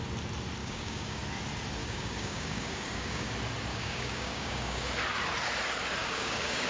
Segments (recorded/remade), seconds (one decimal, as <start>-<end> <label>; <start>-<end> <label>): 0.0-0.6 recorded; 0.6-1.2 remade; 1.2-1.8 recorded; 1.8-3.3 remade; 3.3-3.7 recorded; 3.7-4.9 remade; 4.9-6.0 recorded; 6.0-6.7 remade